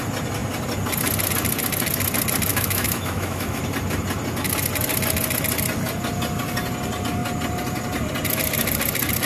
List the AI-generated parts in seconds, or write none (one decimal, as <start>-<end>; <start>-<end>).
2.5-3.6